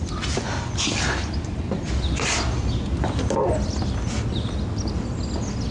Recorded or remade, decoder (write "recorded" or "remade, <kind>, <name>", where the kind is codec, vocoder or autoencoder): recorded